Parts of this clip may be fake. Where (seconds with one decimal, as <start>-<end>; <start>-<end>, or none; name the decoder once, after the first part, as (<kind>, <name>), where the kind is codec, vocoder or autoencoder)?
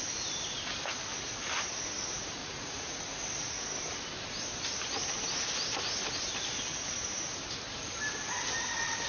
2.4-3.2 (vocoder, Vocos); 6.7-7.2